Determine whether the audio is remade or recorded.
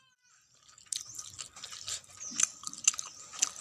recorded